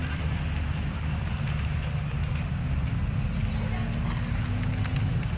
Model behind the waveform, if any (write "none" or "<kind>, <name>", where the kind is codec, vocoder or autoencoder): none